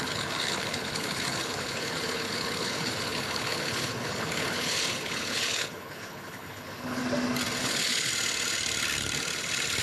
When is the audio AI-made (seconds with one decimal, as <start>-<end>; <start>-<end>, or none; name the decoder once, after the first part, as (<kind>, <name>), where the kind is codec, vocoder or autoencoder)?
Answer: 0.0-7.0 (codec, HILCodec); 7.6-8.1